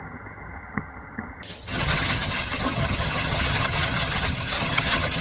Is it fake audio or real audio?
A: fake